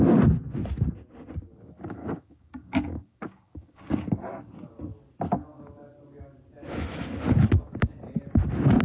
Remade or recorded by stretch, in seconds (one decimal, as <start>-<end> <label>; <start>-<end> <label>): 0.0-2.0 recorded; 2.0-4.2 remade; 4.2-8.8 recorded